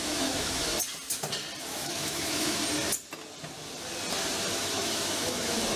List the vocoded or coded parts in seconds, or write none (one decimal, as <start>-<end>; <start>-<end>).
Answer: 0.0-0.7; 1.6-2.6; 4.5-5.8